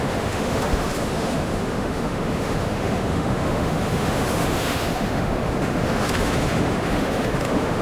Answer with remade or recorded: remade